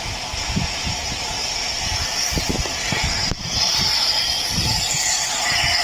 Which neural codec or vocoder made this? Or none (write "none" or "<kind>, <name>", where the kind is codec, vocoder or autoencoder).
none